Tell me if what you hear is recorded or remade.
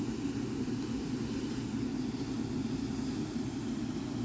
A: recorded